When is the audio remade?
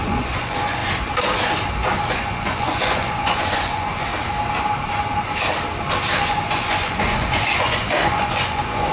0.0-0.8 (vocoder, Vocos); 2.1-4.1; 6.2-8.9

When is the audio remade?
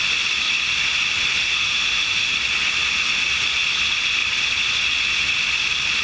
1.4-2.3 (autoencoder, DAC-VAE)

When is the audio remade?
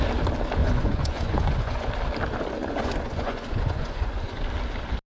0.6-1.9 (vocoder, Vocos); 2.6-4.4